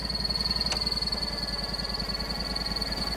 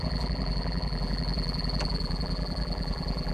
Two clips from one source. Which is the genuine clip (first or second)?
first